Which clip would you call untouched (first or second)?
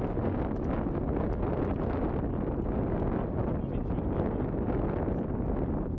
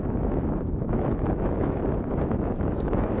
first